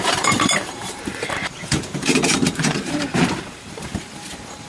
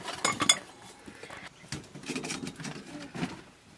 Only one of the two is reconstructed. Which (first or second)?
first